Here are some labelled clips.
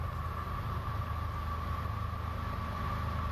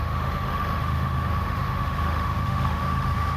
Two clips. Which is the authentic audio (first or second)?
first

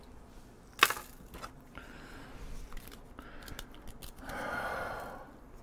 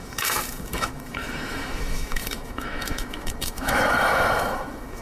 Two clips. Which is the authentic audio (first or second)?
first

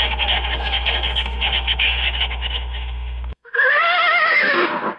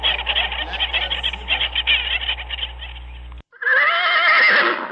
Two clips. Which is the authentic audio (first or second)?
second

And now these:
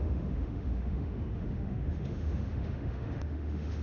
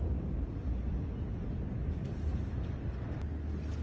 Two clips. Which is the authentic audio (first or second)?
second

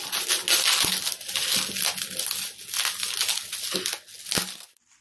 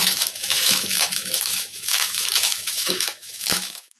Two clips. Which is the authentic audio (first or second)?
first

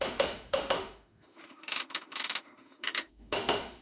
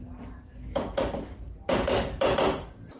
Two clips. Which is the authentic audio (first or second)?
second